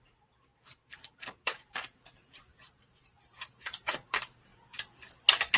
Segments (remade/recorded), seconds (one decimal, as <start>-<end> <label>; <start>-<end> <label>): 0.0-4.5 remade; 4.5-5.6 recorded